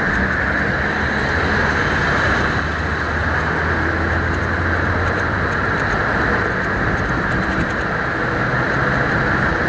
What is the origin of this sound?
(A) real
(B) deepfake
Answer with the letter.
A